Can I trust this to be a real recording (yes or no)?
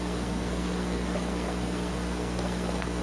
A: no